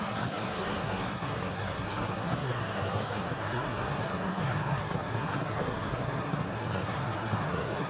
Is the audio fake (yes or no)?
yes